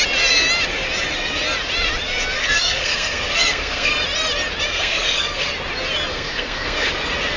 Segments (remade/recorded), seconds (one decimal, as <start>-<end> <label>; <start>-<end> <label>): 0.0-2.4 recorded; 2.4-3.9 remade; 3.9-4.7 recorded; 4.7-5.5 remade; 5.5-6.1 recorded; 6.1-6.9 remade; 6.9-7.4 recorded